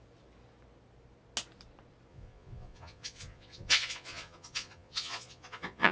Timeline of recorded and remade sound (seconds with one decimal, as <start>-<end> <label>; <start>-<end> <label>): 0.0-2.1 recorded; 2.1-5.9 remade